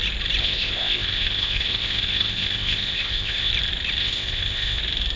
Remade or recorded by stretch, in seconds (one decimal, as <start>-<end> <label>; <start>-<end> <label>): 0.0-0.4 recorded; 0.4-3.5 remade; 3.5-4.0 recorded; 4.0-4.8 remade; 4.8-5.2 recorded